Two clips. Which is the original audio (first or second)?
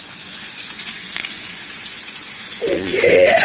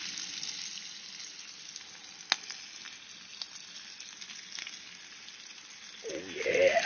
second